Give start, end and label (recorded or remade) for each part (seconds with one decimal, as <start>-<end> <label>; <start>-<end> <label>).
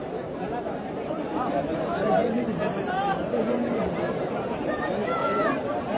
0.0-6.0 remade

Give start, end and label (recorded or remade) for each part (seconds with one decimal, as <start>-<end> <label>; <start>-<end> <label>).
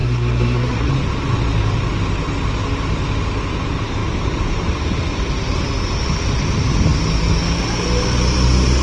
0.0-0.9 remade; 0.9-8.8 recorded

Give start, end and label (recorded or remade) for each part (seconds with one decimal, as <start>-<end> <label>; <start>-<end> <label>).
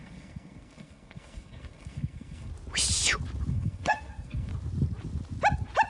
0.0-2.5 remade; 2.5-3.5 recorded; 3.5-4.5 remade; 4.5-5.9 recorded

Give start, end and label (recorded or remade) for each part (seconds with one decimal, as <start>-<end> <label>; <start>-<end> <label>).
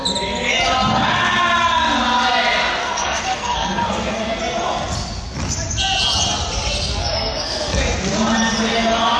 0.0-2.8 recorded; 2.8-4.4 remade; 4.4-7.0 recorded; 7.0-7.8 remade; 7.8-9.2 recorded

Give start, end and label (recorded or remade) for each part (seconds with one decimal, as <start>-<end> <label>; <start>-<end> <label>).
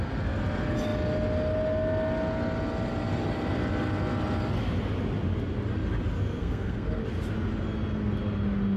0.0-6.4 recorded; 6.4-7.0 remade; 7.0-8.8 recorded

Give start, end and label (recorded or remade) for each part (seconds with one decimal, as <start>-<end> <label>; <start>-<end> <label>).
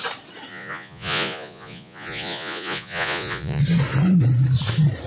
0.0-0.5 recorded; 0.5-3.6 remade; 3.6-5.1 recorded